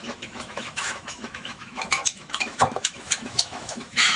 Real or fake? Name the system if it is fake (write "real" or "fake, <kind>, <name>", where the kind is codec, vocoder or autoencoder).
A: fake, autoencoder, DAC-VAE